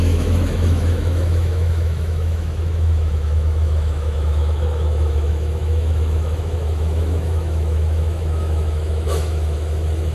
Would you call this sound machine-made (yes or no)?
yes